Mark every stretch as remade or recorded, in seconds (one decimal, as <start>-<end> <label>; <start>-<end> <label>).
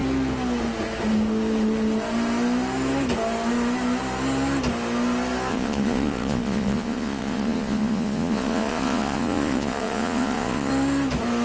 0.0-5.5 recorded; 5.5-10.7 remade; 10.7-11.4 recorded